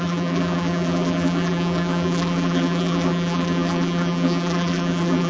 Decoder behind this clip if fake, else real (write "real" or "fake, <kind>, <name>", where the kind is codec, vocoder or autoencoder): fake, vocoder, BigVGAN v2